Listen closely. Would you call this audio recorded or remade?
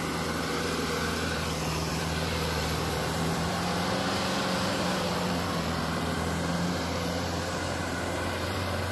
remade